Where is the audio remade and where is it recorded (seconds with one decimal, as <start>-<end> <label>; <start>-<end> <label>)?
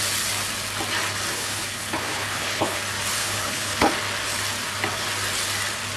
0.0-1.3 recorded; 1.3-2.8 remade; 2.8-3.2 recorded; 3.2-3.9 remade; 3.9-6.0 recorded